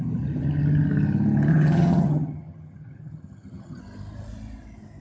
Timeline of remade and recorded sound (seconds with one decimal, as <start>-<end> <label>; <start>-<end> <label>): 0.0-1.5 recorded; 1.5-3.8 remade; 3.8-5.0 recorded